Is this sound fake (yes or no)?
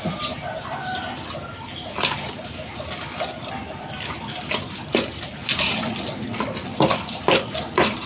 no